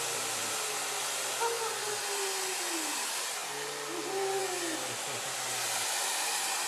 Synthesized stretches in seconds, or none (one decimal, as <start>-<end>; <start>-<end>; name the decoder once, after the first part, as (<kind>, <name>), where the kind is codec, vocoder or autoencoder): none